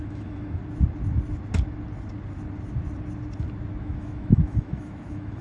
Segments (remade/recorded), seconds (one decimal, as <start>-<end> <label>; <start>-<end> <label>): 0.0-0.6 remade; 0.6-3.8 recorded; 3.8-5.4 remade